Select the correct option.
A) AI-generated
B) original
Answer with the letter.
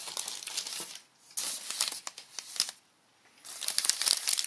B